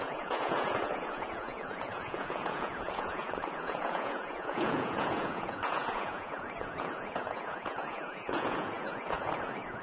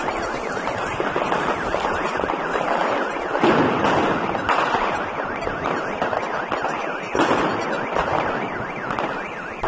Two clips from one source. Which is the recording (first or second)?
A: second